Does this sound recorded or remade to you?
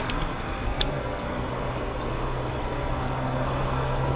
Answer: remade